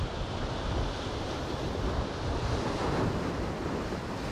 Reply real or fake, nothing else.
real